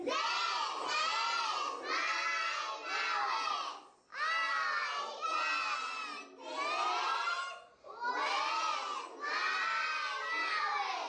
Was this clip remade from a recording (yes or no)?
no